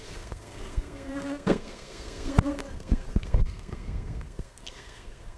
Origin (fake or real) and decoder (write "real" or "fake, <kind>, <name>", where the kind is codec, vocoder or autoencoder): fake, codec, SNAC